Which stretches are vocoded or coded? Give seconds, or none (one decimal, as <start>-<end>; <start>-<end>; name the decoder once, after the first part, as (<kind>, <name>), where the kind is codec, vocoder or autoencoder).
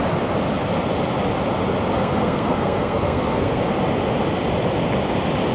1.9-3.6 (codec, SNAC)